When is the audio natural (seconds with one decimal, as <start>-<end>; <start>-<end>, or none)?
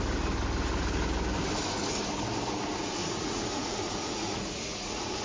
0.0-3.0